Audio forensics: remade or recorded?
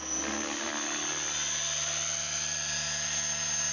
recorded